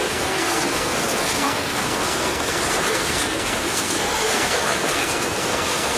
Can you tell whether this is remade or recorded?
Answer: remade